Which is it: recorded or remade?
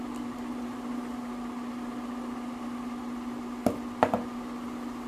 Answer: recorded